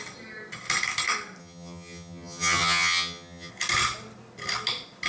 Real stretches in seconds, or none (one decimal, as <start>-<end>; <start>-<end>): 0.0-1.4; 3.5-5.1